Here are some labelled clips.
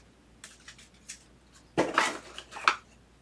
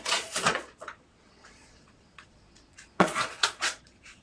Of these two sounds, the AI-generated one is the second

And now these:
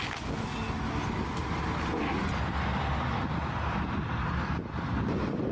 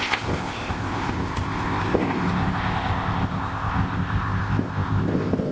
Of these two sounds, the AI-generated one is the second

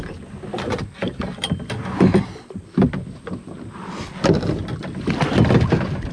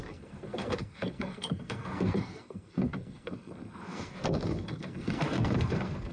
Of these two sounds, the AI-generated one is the second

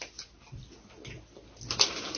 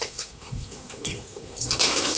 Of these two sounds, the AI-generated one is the second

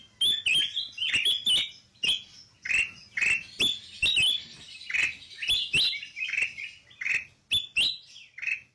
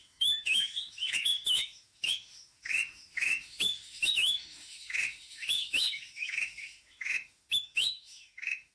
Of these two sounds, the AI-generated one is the second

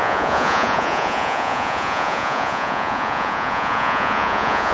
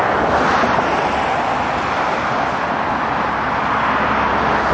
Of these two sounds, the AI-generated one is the first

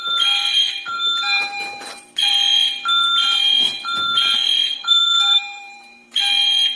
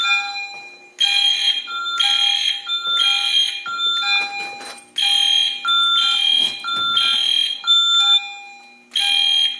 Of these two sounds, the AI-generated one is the first